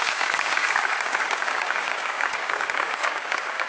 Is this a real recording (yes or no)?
no